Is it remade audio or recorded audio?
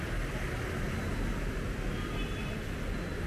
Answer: recorded